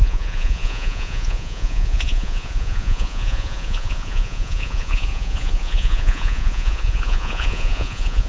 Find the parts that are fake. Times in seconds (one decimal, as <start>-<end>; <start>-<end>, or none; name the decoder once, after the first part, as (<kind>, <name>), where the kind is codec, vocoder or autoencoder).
0.0-8.3 (vocoder, Vocos)